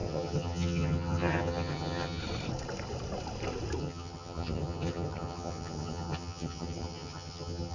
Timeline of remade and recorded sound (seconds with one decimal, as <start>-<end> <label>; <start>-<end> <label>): 0.0-2.2 remade; 2.2-3.8 recorded; 3.8-7.7 remade

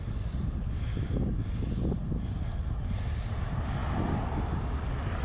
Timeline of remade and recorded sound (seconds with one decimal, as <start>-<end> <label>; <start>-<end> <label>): 0.0-5.2 recorded

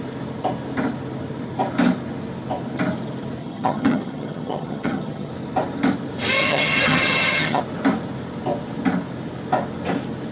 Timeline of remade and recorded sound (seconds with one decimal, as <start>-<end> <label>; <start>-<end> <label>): 0.0-3.4 recorded; 3.4-5.3 remade; 5.3-6.4 recorded; 6.4-7.6 remade; 7.6-10.3 recorded

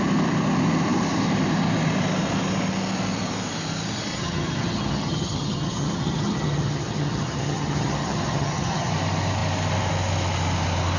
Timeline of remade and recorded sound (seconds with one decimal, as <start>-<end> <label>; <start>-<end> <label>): 0.0-4.1 recorded; 4.1-8.9 remade; 8.9-11.0 recorded

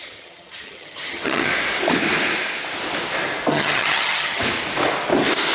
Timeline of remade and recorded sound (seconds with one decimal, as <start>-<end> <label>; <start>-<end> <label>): 0.0-1.5 remade; 1.5-3.5 recorded; 3.5-4.4 remade; 4.4-5.5 recorded